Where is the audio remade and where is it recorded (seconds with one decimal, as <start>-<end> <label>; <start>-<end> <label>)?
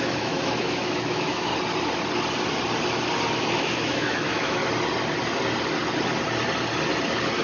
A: 0.0-1.5 remade; 1.5-3.4 recorded; 3.4-4.6 remade; 4.6-7.4 recorded